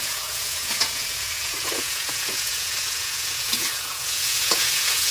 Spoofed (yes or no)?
yes